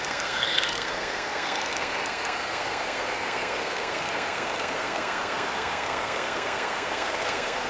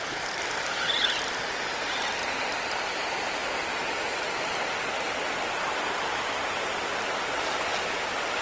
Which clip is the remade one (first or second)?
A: first